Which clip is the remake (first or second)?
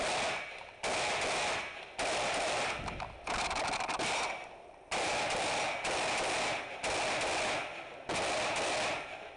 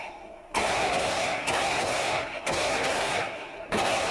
second